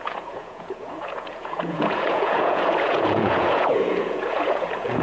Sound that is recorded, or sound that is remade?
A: remade